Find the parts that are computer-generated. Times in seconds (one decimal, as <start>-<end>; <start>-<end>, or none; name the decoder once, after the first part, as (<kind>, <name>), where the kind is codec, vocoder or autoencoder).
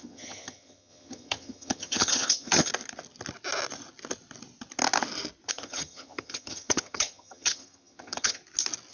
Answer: 0.0-2.7 (vocoder, HiFi-GAN); 5.5-8.4